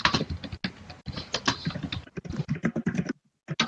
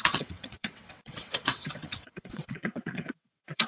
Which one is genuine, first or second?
first